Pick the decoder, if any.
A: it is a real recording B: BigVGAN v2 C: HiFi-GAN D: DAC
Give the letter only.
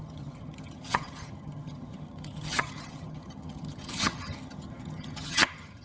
C